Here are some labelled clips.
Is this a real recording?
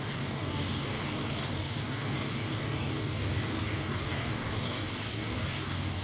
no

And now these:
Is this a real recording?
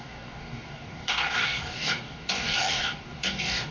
no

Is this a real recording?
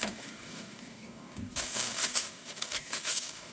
no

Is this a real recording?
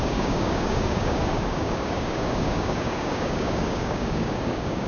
no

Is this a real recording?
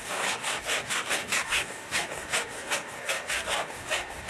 no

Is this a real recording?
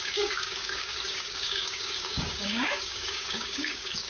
no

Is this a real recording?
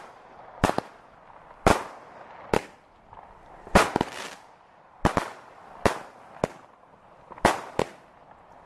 yes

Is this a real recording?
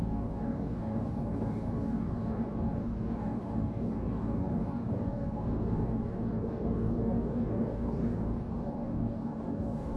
no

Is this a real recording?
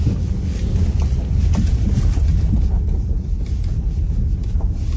yes